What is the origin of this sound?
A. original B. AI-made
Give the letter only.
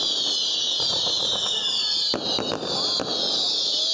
A